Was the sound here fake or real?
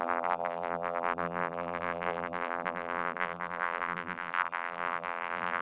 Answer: fake